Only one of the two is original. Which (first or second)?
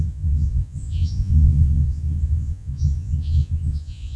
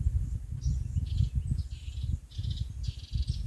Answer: second